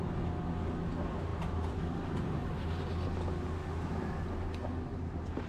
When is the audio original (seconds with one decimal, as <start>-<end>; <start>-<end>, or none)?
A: 0.0-1.3; 4.0-4.9